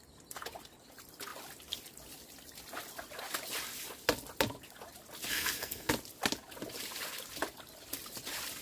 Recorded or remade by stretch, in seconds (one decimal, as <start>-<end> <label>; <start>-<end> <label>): 0.0-5.3 recorded; 5.3-5.9 remade; 5.9-8.6 recorded